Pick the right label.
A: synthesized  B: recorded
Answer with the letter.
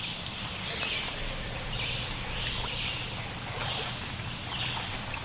B